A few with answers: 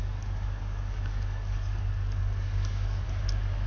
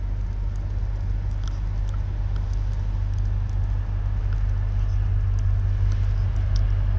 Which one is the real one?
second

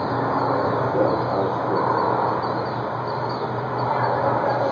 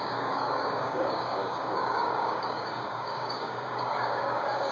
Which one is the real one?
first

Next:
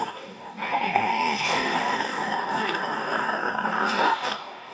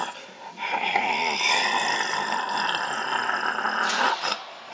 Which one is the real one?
second